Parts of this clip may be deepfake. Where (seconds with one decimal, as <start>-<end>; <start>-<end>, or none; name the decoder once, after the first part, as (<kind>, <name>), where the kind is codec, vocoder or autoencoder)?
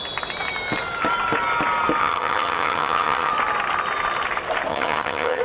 2.0-3.3 (vocoder, HiFi-GAN); 4.7-5.4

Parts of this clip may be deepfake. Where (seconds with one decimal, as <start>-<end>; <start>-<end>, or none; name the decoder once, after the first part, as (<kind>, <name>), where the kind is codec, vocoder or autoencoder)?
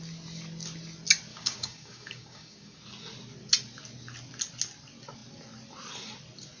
1.3-2.8 (codec, DAC)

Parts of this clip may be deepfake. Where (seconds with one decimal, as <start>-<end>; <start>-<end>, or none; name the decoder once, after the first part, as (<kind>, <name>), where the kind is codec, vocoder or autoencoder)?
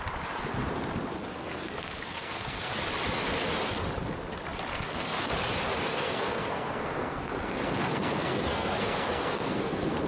1.3-2.8 (codec, SNAC); 4.7-5.3; 5.9-10.1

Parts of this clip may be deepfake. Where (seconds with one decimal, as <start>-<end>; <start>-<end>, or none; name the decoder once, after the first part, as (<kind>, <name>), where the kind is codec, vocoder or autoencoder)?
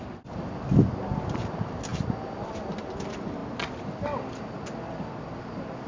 none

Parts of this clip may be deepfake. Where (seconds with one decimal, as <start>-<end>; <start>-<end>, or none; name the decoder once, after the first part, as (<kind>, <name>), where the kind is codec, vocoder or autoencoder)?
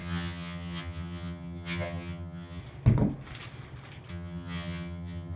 0.0-2.6 (vocoder, HiFi-GAN); 4.1-5.4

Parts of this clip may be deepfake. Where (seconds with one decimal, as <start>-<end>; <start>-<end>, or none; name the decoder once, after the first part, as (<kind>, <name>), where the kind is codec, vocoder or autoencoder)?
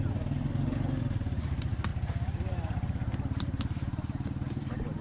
1.9-5.0 (vocoder, BigVGAN v2)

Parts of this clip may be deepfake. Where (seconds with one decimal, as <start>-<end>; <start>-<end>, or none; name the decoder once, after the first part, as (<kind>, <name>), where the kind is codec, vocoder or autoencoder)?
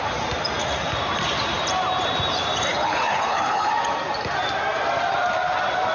2.7-3.7 (codec, HILCodec)